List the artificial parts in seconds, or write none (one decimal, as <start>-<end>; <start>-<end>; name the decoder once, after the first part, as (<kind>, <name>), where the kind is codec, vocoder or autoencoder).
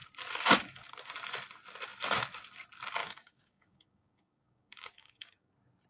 3.0-5.5 (codec, DAC)